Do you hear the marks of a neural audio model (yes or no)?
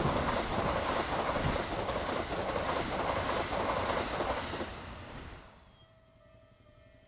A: no